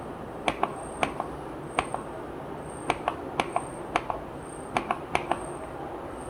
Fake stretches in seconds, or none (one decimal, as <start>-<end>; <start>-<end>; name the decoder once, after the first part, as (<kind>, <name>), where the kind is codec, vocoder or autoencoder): none